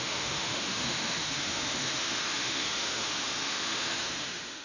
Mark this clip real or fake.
fake